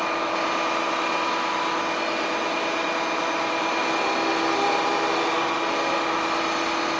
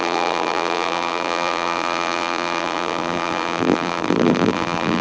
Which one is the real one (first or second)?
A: first